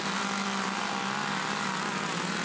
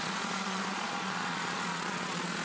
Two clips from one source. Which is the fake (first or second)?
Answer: second